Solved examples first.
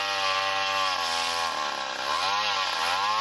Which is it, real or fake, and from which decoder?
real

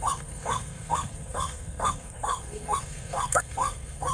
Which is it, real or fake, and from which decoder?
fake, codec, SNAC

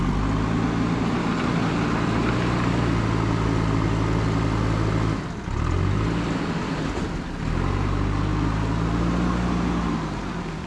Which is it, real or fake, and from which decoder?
real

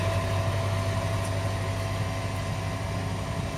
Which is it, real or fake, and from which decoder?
real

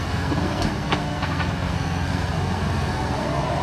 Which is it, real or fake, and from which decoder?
fake, codec, SNAC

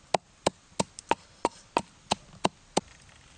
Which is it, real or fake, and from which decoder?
real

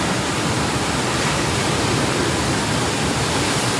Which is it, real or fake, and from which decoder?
real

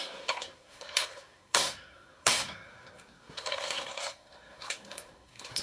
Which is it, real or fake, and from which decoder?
fake, codec, SNAC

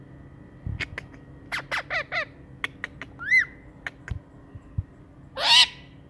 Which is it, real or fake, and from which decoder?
real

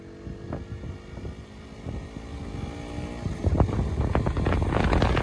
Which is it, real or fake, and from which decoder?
real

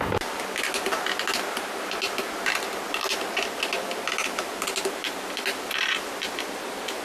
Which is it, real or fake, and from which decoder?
real